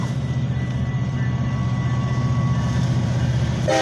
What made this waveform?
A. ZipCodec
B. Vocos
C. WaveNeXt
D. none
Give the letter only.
D